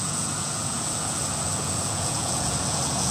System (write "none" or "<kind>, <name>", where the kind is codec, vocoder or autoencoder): vocoder, Vocos